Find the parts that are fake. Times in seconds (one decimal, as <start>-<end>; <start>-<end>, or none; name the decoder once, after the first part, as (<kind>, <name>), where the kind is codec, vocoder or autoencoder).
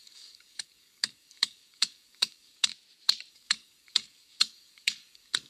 0.0-2.7 (codec, DAC); 3.3-5.5